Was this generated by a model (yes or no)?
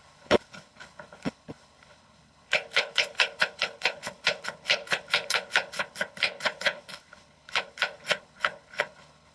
yes